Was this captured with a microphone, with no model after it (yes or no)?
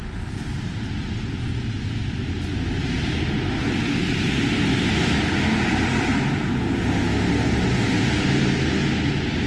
yes